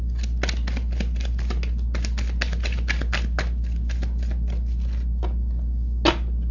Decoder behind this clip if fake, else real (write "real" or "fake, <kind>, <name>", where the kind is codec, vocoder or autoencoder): real